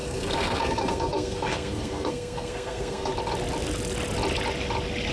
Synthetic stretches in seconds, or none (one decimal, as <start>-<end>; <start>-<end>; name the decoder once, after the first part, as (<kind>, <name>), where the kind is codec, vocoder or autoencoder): 0.0-3.1 (codec, SNAC)